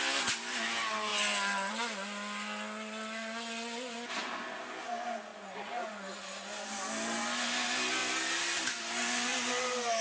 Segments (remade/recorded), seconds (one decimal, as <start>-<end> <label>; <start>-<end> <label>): 0.0-8.0 recorded; 8.0-9.5 remade; 9.5-10.0 recorded